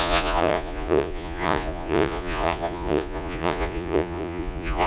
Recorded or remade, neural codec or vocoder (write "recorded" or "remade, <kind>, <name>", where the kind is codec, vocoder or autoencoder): remade, vocoder, Vocos